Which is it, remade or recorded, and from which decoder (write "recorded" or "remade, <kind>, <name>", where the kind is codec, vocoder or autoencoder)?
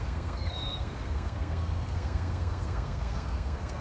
remade, codec, SNAC